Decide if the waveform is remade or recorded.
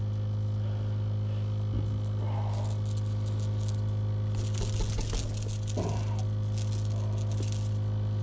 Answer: recorded